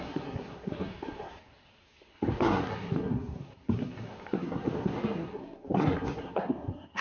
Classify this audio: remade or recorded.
remade